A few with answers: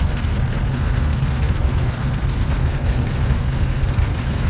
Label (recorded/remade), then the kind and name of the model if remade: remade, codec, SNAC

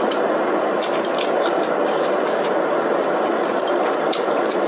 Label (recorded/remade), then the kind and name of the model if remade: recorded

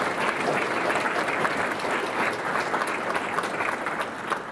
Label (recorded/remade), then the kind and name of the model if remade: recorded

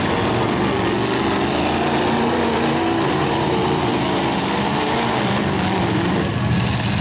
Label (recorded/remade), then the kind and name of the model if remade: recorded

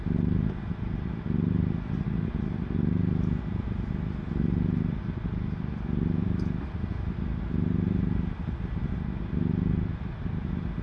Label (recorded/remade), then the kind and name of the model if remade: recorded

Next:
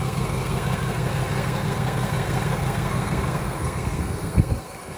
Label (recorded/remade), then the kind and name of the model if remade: remade, codec, SNAC